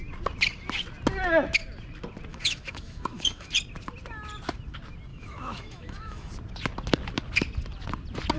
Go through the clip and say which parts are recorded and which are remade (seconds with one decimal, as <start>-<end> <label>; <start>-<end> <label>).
0.0-2.3 recorded; 2.3-3.5 remade; 3.5-5.1 recorded; 5.1-6.3 remade; 6.3-8.4 recorded